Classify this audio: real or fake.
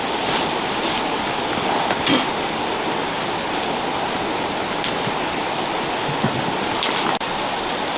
real